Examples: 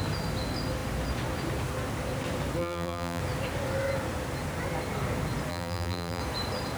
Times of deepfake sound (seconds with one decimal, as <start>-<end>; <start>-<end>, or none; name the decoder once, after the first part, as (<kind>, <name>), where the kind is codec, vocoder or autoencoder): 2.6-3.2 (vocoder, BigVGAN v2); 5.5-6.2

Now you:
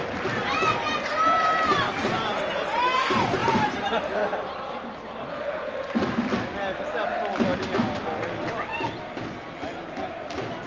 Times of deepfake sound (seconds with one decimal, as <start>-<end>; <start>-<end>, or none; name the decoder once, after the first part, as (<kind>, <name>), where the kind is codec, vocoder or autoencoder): 3.4-6.1 (vocoder, BigVGAN v2)

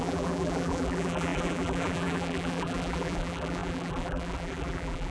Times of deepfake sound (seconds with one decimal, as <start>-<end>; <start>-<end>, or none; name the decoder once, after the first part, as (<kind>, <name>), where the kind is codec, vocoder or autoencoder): 0.0-5.1 (vocoder, BigVGAN v2)